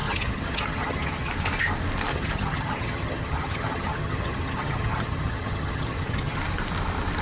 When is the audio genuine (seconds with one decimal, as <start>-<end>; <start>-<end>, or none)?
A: 1.3-2.1; 6.4-7.2